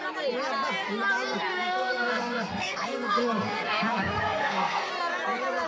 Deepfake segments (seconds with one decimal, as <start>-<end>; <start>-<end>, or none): 1.5-4.9